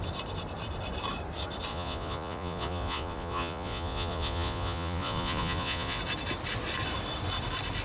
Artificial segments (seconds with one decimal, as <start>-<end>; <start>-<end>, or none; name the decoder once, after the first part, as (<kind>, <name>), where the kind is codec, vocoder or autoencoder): 1.7-6.0 (vocoder, Vocos)